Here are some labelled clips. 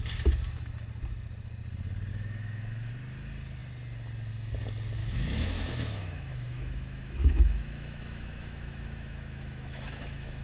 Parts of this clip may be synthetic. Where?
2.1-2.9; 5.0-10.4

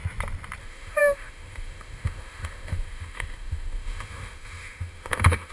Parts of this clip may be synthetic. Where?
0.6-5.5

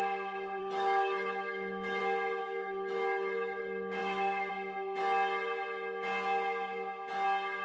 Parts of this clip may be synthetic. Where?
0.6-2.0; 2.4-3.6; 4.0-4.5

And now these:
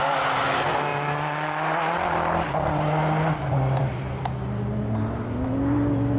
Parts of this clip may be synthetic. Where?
none

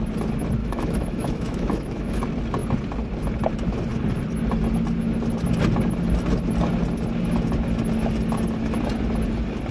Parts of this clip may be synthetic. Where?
0.6-2.2

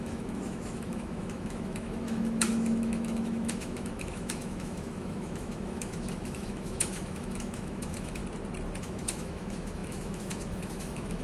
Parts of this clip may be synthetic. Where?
0.0-8.2; 8.8-11.2

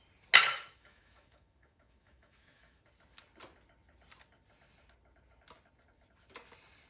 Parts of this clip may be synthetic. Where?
0.4-2.8